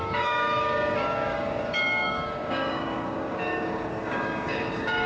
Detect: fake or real fake